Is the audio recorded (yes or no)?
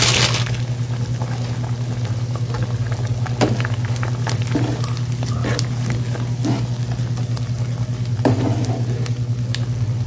yes